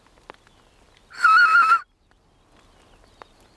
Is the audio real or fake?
real